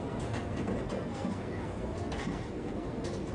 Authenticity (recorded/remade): remade